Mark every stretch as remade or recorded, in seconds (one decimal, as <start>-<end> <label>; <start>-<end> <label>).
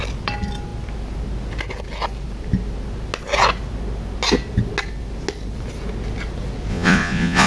0.0-6.7 recorded; 6.7-7.5 remade